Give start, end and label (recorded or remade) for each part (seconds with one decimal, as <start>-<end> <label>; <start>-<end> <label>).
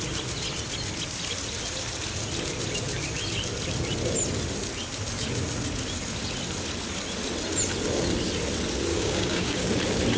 0.0-8.9 recorded; 8.9-9.7 remade; 9.7-10.2 recorded